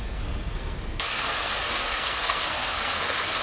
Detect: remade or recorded remade